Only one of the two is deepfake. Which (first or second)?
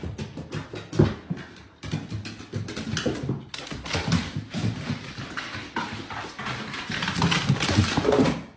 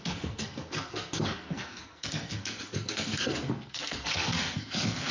second